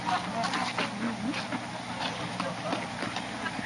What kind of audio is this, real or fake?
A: real